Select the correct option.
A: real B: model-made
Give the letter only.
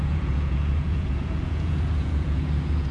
B